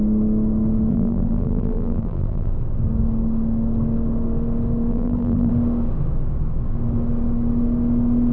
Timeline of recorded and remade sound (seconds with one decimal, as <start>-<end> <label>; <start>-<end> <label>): 0.0-0.9 recorded; 0.9-2.5 remade; 2.5-4.9 recorded; 4.9-5.5 remade; 5.5-8.3 recorded